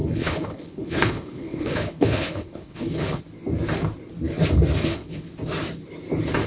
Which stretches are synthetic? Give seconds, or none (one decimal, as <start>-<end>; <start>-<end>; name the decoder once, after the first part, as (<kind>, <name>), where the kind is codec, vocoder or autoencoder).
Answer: 0.0-3.2 (codec, HILCodec); 4.8-5.3